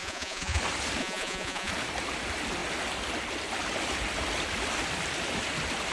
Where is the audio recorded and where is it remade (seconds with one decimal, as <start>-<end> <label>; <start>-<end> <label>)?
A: 0.0-0.6 remade; 0.6-1.0 recorded; 1.0-1.7 remade; 1.7-5.9 recorded